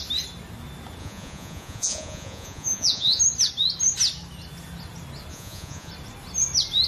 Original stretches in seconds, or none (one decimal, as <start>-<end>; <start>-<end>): 0.0-1.0; 3.2-5.3; 5.9-6.9

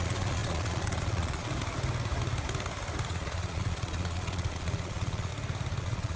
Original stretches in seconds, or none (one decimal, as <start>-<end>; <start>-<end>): 1.5-3.1; 5.3-5.8

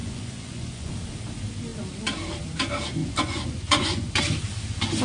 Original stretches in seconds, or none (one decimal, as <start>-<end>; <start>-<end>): 0.9-3.0; 4.2-5.0

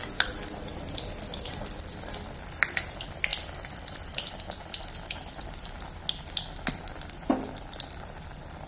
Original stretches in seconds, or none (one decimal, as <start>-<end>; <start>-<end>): 0.0-8.7

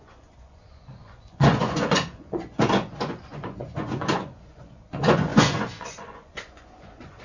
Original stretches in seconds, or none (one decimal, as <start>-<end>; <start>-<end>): none

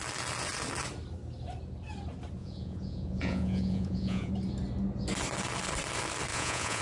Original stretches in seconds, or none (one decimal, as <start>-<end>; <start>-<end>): 0.0-2.4; 4.3-6.3

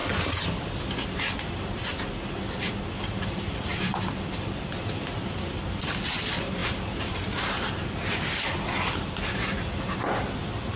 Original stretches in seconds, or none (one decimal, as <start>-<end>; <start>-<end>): 0.0-10.8